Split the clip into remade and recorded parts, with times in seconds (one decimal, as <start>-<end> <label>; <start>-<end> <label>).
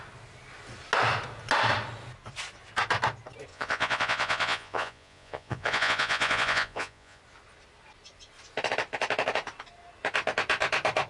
0.0-3.5 recorded; 3.5-7.2 remade; 7.2-11.1 recorded